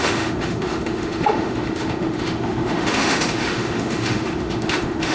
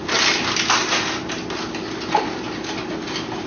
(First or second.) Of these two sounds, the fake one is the first